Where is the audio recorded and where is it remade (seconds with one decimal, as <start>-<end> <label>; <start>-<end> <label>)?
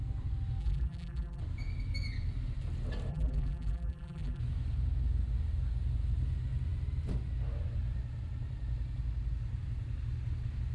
0.0-0.6 recorded; 0.6-1.4 remade; 1.4-3.1 recorded; 3.1-4.4 remade; 4.4-10.7 recorded